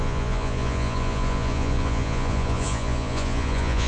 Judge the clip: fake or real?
fake